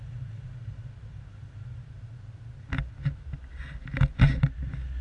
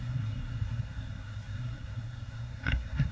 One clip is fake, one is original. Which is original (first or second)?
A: first